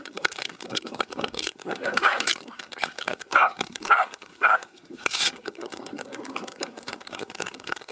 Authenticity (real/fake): fake